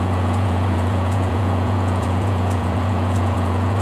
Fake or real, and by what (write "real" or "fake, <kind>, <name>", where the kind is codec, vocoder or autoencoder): fake, vocoder, Vocos